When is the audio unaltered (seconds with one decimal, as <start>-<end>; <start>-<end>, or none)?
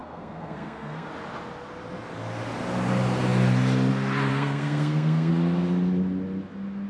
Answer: 1.1-4.3; 5.3-6.9